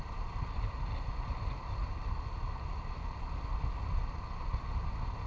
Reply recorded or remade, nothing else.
recorded